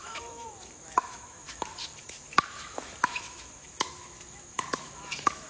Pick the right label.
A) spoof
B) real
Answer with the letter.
A